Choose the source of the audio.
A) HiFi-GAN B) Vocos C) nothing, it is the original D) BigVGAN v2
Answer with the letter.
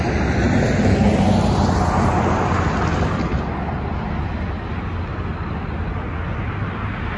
C